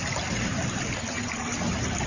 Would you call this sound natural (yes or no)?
yes